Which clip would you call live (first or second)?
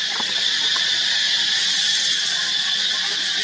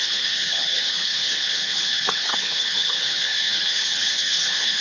first